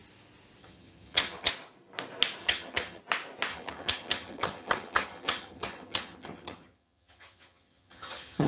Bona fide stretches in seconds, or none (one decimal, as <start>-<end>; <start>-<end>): 0.0-0.6; 1.5-2.4; 3.0-3.5

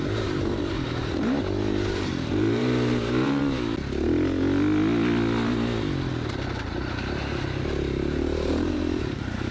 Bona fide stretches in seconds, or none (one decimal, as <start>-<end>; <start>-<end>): 3.4-7.3

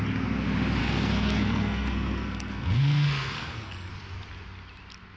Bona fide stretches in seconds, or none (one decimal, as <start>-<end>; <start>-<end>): 0.0-0.8; 3.9-5.2